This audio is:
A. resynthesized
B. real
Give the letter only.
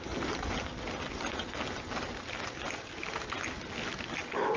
B